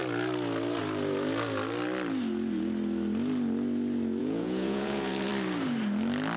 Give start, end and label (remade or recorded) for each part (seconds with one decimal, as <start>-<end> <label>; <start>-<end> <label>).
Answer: 0.0-4.2 recorded; 4.2-5.3 remade; 5.3-6.4 recorded